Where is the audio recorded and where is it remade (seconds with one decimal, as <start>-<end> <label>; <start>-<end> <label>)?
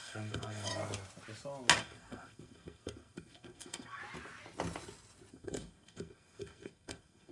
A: 0.0-0.7 remade; 0.7-1.8 recorded; 1.8-4.0 remade; 4.0-5.3 recorded; 5.3-7.3 remade